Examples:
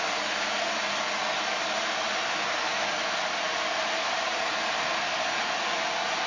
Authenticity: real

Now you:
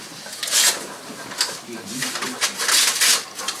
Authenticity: real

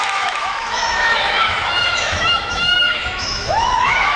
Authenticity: fake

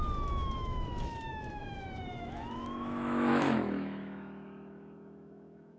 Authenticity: fake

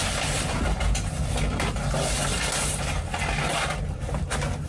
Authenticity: real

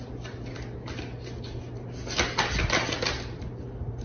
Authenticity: real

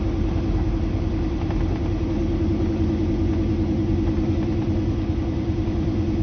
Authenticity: real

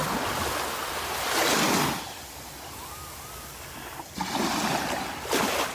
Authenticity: real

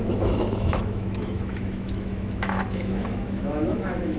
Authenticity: fake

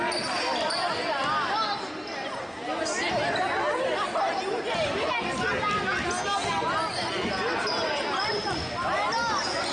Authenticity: real